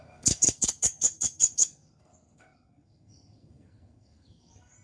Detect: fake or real fake